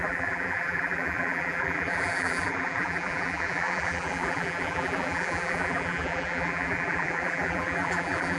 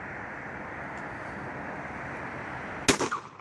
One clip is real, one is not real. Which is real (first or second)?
second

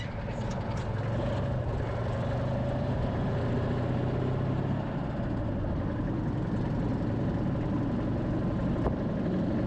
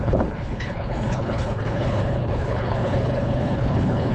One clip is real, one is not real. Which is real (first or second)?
first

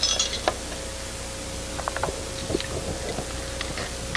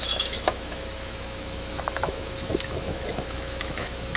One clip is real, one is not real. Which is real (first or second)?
first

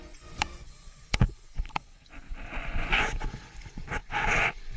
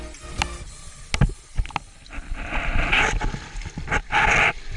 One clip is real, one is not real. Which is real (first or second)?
second